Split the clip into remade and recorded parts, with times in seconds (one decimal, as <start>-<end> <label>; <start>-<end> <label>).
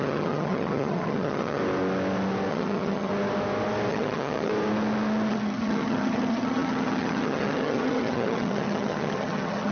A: 0.0-1.6 remade; 1.6-2.5 recorded; 2.5-3.1 remade; 3.1-3.9 recorded; 3.9-4.5 remade; 4.5-5.3 recorded; 5.3-9.7 remade